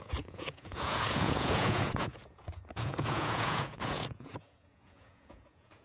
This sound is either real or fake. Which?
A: fake